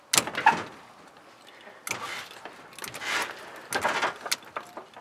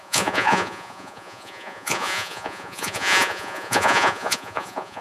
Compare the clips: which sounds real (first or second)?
first